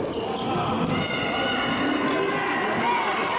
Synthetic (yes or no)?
no